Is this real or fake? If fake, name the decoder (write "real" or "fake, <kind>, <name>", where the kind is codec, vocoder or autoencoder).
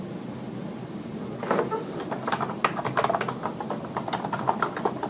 real